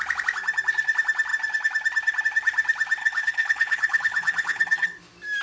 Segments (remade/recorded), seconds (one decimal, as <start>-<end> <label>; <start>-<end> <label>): 0.0-3.0 recorded; 3.0-5.0 remade; 5.0-5.4 recorded